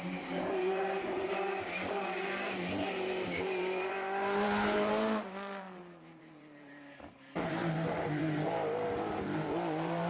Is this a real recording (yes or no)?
no